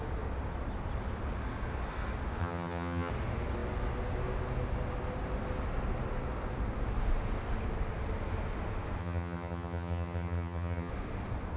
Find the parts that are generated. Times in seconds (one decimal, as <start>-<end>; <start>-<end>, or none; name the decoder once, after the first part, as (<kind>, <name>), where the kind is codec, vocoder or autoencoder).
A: 2.4-3.1 (vocoder, HiFi-GAN); 9.0-10.9